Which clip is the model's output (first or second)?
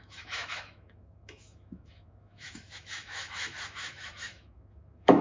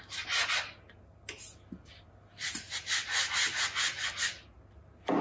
first